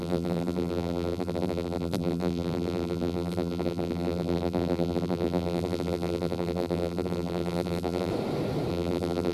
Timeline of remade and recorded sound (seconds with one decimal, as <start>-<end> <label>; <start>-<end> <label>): 0.0-8.1 remade; 8.1-8.7 recorded; 8.7-9.3 remade

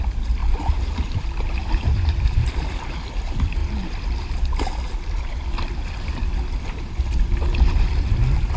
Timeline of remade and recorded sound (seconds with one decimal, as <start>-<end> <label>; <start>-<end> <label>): 0.0-0.4 recorded; 0.4-3.0 remade; 3.0-8.6 recorded

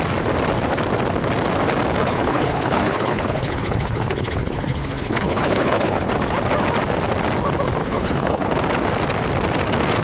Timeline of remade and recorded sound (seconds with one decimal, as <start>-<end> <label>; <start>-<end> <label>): 0.0-2.0 recorded; 2.0-6.1 remade; 6.1-7.8 recorded; 7.8-8.5 remade; 8.5-10.0 recorded

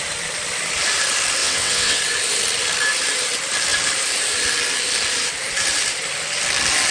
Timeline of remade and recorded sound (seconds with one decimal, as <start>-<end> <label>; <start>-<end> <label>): 0.0-1.4 recorded; 1.4-2.0 remade; 2.0-6.9 recorded

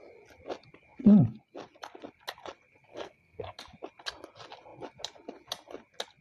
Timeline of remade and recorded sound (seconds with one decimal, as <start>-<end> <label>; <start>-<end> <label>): 0.0-2.9 recorded; 2.9-3.6 remade; 3.6-6.2 recorded

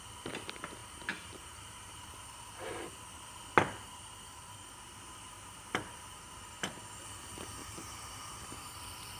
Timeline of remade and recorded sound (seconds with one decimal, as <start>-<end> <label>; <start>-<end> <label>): 0.0-0.8 recorded; 0.8-2.1 remade; 2.1-7.6 recorded; 7.6-8.4 remade; 8.4-9.2 recorded

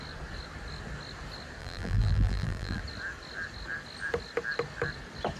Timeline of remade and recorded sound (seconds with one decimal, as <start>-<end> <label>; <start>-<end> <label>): 0.0-1.6 recorded; 1.6-2.8 remade; 2.8-5.4 recorded